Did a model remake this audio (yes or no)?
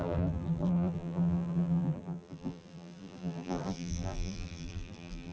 yes